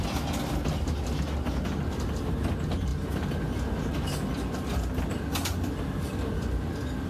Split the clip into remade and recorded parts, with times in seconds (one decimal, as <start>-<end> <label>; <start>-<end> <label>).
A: 0.0-7.1 recorded